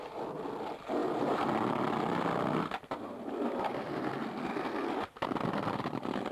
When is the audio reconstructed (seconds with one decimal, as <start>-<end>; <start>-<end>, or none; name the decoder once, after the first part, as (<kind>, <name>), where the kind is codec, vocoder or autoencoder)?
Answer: none